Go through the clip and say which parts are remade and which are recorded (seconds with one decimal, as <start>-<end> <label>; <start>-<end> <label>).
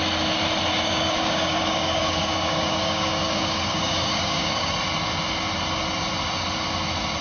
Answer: 0.0-0.7 recorded; 0.7-4.7 remade; 4.7-7.2 recorded